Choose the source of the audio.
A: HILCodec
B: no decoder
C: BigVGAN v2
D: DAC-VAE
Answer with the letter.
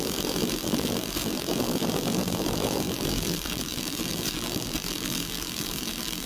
C